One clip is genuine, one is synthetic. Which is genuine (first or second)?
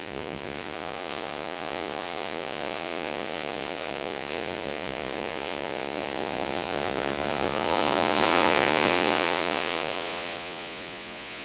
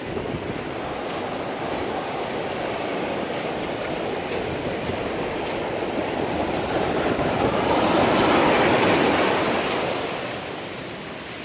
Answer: second